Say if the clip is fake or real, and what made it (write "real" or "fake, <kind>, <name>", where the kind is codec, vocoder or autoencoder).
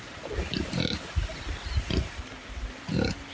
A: real